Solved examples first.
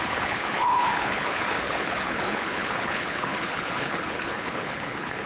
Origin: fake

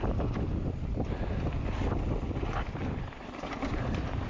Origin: fake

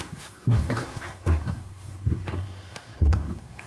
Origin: fake